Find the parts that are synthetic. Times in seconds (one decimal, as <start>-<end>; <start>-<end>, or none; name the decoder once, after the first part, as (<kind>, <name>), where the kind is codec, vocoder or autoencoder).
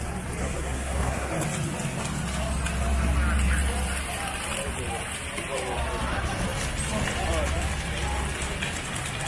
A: 0.4-1.3 (codec, SNAC)